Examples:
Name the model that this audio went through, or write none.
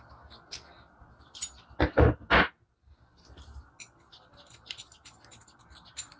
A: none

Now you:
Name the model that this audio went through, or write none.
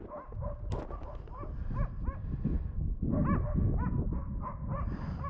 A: none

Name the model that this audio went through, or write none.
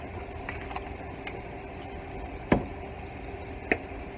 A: none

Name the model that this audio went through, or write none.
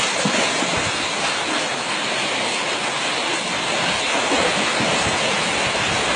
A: none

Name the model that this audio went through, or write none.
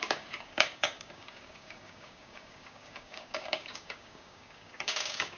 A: codec, DAC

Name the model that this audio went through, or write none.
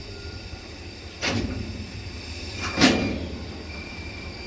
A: vocoder, BigVGAN v2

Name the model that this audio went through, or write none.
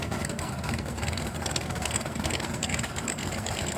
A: codec, SNAC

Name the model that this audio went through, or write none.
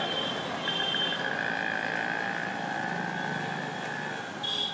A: none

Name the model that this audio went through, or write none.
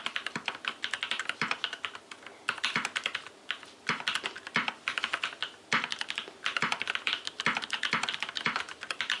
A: none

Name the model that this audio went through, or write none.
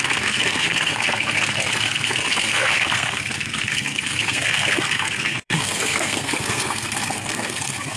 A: codec, SNAC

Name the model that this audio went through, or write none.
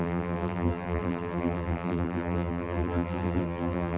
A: vocoder, BigVGAN v2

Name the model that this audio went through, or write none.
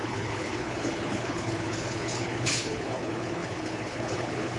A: codec, HILCodec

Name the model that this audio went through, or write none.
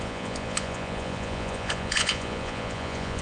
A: vocoder, Vocos